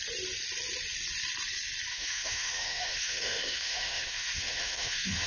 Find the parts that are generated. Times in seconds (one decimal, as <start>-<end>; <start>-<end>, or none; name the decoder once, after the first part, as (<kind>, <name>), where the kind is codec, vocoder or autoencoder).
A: 1.9-5.3 (autoencoder, DAC-VAE)